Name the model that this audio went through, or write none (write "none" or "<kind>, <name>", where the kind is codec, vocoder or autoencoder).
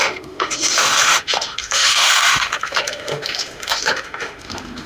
autoencoder, DAC-VAE